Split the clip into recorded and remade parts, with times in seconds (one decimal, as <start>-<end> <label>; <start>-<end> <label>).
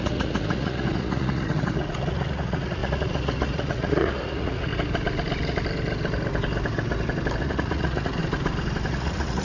0.0-4.7 remade; 4.7-7.4 recorded; 7.4-8.2 remade; 8.2-8.9 recorded; 8.9-9.4 remade